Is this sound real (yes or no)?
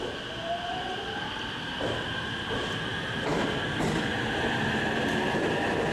yes